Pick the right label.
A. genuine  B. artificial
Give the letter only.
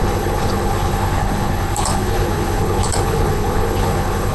B